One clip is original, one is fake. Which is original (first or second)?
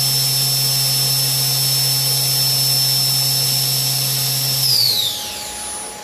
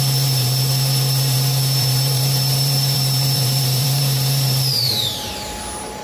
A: first